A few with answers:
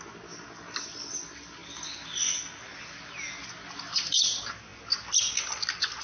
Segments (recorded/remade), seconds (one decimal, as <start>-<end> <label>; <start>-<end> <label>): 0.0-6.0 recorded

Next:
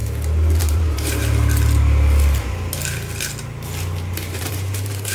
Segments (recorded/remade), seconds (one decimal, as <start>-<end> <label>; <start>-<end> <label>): 0.0-0.6 recorded; 0.6-1.2 remade; 1.2-4.1 recorded; 4.1-5.1 remade

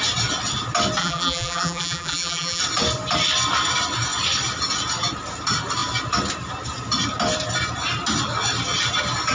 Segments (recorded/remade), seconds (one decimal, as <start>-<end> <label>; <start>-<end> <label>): 0.0-1.0 recorded; 1.0-2.6 remade; 2.6-9.3 recorded

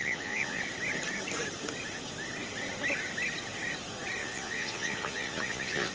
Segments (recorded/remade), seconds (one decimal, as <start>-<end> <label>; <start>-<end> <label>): 0.0-0.6 remade; 0.6-4.2 recorded; 4.2-5.9 remade